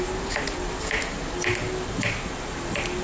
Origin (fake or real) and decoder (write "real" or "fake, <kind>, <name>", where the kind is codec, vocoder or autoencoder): real